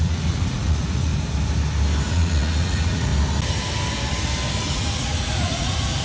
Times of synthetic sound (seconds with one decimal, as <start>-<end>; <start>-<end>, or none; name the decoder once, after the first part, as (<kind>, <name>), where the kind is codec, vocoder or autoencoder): 0.0-1.1 (vocoder, Vocos); 2.1-3.1; 4.6-6.0